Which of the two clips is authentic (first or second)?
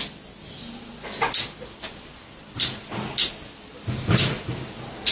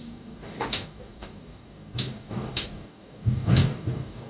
first